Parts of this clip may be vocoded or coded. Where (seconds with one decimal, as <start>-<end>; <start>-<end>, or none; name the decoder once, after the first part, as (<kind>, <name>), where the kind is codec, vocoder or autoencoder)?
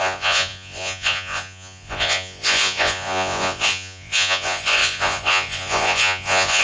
0.0-6.6 (vocoder, Vocos)